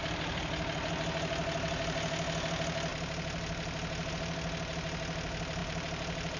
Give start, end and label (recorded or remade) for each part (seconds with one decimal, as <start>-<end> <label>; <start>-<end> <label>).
0.0-0.9 remade; 0.9-5.6 recorded; 5.6-6.4 remade